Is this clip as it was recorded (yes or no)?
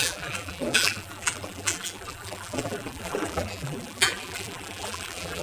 no